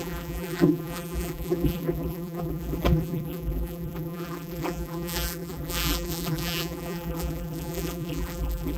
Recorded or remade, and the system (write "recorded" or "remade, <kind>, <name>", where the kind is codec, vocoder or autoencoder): remade, vocoder, BigVGAN v2